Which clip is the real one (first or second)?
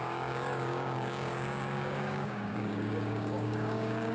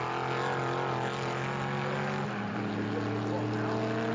second